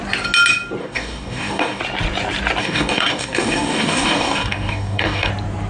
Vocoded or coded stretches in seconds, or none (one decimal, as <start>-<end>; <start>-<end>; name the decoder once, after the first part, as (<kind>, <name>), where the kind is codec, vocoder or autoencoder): 0.8-1.8 (codec, DAC); 2.6-5.3